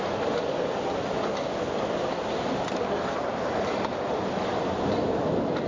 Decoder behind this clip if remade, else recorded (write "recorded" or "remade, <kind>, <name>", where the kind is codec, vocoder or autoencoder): recorded